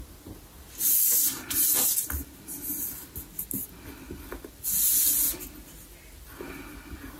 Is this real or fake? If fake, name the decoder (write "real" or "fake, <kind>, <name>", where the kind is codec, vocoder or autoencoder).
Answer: real